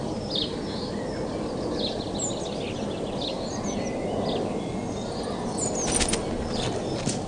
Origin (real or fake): real